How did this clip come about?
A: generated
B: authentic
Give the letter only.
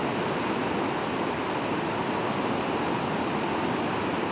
B